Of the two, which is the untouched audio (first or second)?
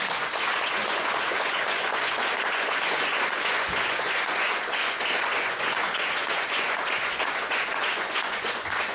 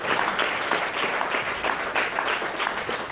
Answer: second